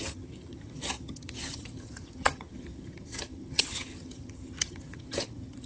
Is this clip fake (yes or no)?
yes